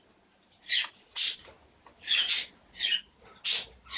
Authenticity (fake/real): real